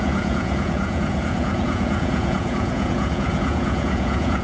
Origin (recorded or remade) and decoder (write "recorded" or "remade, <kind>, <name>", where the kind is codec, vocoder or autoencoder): remade, vocoder, Vocos